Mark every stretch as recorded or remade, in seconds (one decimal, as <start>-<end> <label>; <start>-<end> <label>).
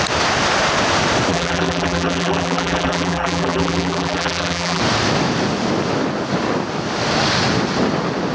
0.0-1.3 recorded; 1.3-4.8 remade; 4.8-8.3 recorded